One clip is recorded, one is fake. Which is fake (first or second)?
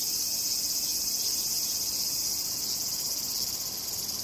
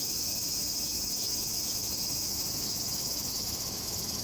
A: second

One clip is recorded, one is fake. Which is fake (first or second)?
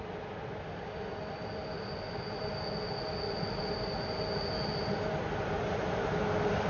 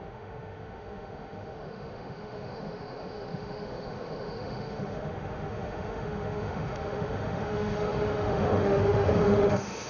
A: second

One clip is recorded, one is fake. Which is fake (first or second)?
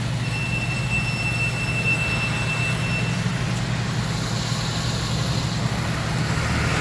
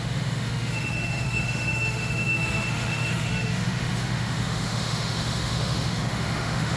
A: second